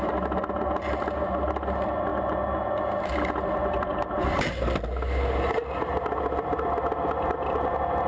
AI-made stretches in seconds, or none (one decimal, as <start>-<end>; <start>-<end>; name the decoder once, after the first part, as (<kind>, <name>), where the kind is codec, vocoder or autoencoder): none